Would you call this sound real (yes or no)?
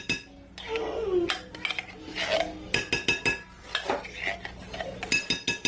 yes